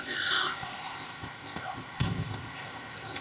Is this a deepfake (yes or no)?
yes